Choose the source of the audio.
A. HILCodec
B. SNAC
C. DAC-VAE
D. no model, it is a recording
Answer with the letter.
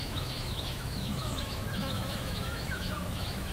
C